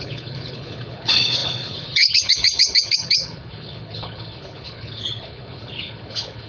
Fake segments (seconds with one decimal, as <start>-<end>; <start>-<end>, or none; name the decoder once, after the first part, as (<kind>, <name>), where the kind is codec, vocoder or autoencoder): 0.0-6.5 (codec, HILCodec)